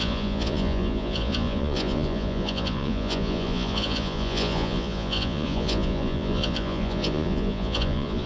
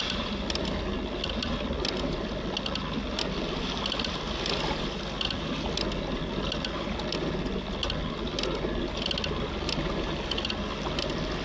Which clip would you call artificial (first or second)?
first